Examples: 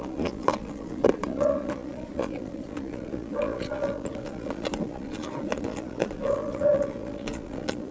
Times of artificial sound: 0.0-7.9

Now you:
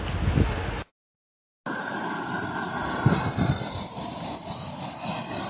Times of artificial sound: 3.9-4.6

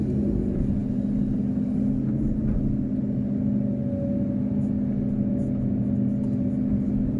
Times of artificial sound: none

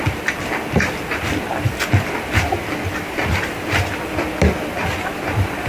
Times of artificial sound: 1.5-4.9

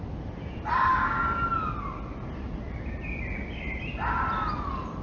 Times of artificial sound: none

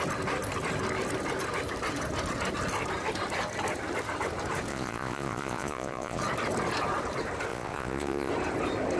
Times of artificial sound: 4.7-6.2; 7.5-8.3

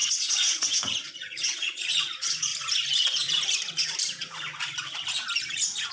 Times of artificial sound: 0.0-2.5; 5.4-5.9

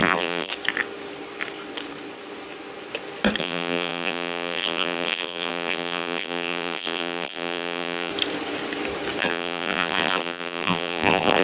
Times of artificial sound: 0.0-0.5; 3.4-8.1; 9.2-11.4